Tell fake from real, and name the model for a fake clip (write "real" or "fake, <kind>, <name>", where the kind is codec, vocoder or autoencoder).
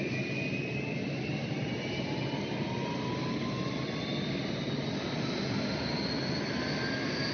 real